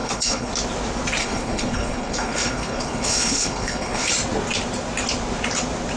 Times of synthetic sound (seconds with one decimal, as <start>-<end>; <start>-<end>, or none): 0.0-0.5; 1.2-4.1

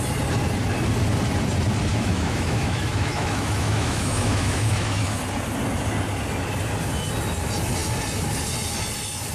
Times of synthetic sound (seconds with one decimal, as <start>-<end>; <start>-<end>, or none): 1.9-5.2